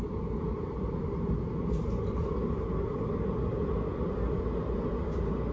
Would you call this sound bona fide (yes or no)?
yes